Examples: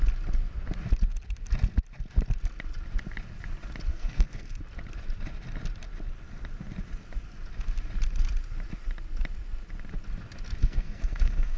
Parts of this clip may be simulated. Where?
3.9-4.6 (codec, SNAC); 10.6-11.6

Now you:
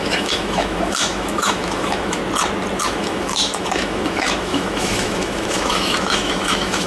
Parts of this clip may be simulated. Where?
0.0-2.2 (autoencoder, DAC-VAE); 2.8-6.9

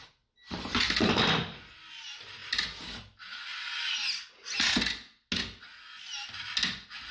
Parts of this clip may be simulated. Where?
none

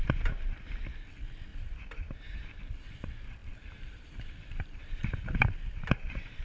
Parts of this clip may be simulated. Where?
1.5-2.7 (vocoder, BigVGAN v2); 3.4-6.4

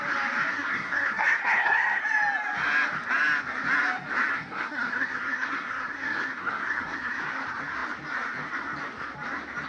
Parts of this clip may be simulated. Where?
0.5-2.0 (codec, SNAC); 4.3-7.2

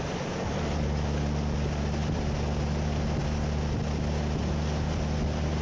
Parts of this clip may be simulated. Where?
none

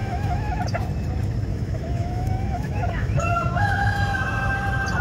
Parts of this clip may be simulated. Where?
0.0-0.6 (autoencoder, DAC-VAE); 1.5-4.5

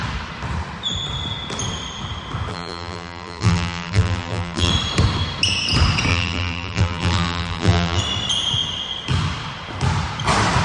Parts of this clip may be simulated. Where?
2.5-4.7 (vocoder, BigVGAN v2); 6.1-8.0